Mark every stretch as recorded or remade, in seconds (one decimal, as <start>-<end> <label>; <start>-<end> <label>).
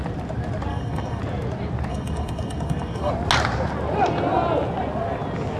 0.0-0.7 recorded; 0.7-1.2 remade; 1.2-1.9 recorded; 1.9-3.1 remade; 3.1-5.6 recorded